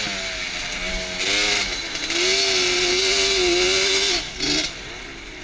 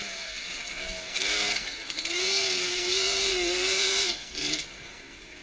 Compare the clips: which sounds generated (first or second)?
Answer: second